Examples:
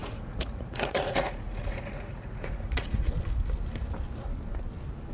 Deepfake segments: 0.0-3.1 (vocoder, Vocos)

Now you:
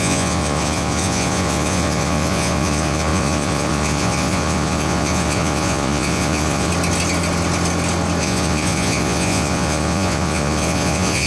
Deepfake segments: 0.0-6.7 (vocoder, Vocos); 8.2-11.3